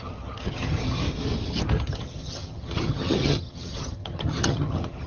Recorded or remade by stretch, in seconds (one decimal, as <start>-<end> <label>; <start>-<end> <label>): 0.0-1.0 remade; 1.0-1.9 recorded; 1.9-5.1 remade